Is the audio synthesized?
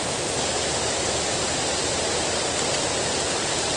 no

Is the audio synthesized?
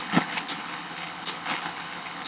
yes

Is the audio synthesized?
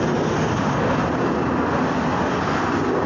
no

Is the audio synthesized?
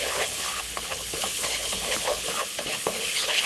yes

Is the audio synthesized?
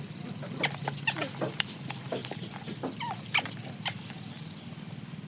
no